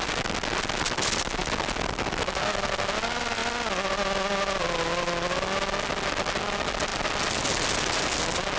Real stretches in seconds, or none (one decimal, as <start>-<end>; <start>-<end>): 0.0-8.6